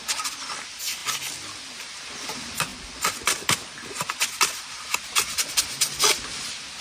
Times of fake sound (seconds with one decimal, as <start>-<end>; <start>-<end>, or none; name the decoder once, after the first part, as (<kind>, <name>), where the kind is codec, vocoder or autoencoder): none